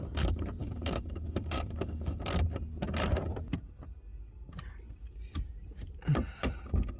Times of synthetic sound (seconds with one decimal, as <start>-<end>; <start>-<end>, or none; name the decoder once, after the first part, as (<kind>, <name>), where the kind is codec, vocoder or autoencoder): 0.6-2.4 (codec, DAC)